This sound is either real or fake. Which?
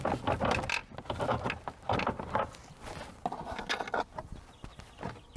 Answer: real